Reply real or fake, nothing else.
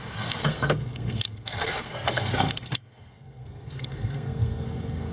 fake